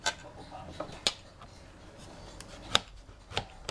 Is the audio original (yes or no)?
yes